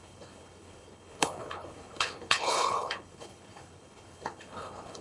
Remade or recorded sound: remade